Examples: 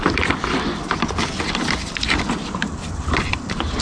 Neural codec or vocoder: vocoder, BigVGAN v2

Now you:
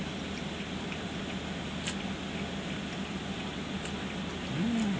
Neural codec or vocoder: none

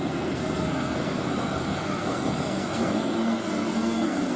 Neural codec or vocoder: codec, SNAC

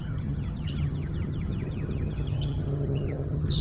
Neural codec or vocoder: vocoder, HiFi-GAN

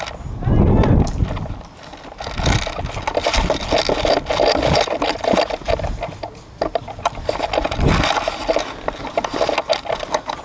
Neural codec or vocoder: none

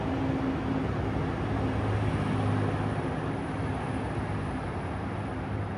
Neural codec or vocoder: none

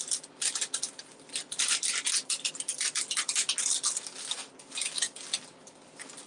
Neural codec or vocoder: none